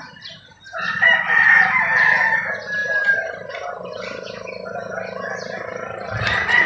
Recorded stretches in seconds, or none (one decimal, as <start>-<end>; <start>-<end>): 0.0-6.7